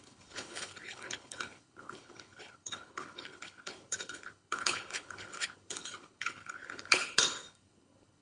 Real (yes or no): no